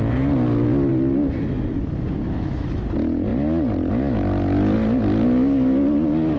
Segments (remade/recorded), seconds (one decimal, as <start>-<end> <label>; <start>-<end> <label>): 0.0-6.4 recorded